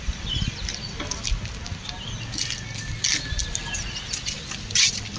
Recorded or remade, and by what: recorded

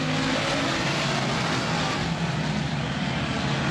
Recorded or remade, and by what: recorded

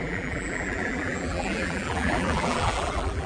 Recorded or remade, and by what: remade, vocoder, BigVGAN v2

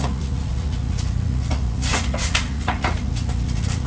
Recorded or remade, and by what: remade, vocoder, Vocos